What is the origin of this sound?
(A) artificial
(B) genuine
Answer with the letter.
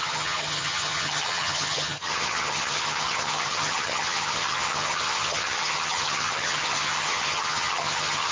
A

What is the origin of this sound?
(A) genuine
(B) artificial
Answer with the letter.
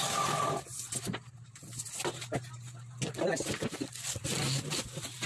A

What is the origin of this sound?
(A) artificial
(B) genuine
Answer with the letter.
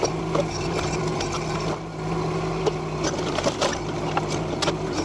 B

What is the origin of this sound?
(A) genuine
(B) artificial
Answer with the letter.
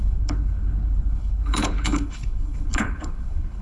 B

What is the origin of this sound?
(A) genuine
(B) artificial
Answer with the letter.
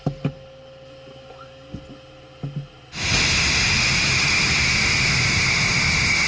A